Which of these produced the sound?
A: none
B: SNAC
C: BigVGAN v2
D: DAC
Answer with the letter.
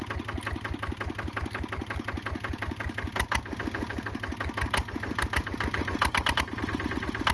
A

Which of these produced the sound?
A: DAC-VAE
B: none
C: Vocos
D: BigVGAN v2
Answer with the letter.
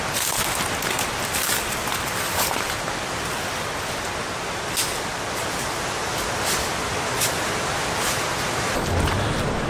B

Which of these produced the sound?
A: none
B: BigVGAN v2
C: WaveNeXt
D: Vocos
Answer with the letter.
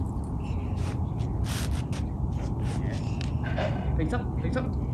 A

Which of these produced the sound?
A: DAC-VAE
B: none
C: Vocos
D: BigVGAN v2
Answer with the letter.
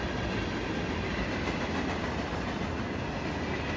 B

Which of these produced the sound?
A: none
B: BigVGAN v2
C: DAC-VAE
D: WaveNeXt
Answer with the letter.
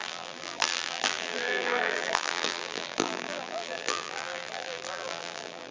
B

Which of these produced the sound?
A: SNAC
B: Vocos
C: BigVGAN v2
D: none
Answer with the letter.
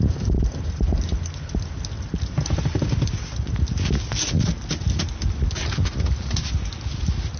D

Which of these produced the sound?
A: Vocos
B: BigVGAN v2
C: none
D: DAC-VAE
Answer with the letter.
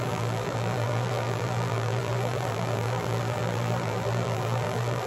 B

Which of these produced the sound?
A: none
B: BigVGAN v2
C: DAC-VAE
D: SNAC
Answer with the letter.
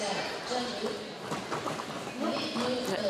A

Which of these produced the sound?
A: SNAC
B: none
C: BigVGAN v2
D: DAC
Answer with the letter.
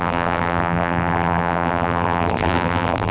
C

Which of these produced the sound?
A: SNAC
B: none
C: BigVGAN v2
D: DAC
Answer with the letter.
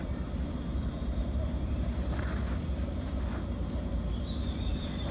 C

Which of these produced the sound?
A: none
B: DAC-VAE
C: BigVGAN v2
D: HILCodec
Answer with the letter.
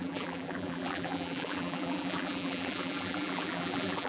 C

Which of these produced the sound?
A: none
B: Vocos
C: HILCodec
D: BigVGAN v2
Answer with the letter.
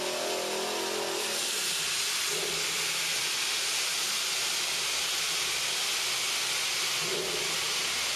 A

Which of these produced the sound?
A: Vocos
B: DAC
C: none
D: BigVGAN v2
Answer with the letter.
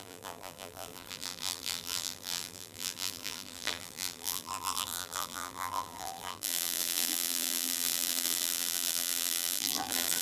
D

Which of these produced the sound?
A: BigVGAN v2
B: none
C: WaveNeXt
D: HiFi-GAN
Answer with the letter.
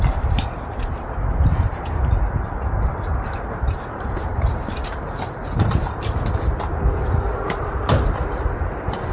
A